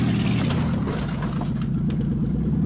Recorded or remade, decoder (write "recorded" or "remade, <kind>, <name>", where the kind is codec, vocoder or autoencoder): recorded